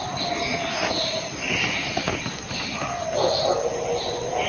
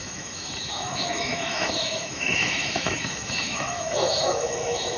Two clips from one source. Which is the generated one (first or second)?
second